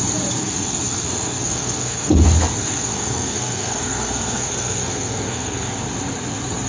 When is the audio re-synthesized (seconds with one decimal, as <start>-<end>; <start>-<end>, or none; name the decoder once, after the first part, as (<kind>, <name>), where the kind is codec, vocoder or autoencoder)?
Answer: 0.4-2.2 (codec, SNAC); 2.6-5.8